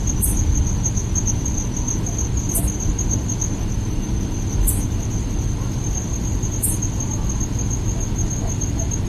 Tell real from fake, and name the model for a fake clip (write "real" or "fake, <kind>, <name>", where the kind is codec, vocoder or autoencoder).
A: real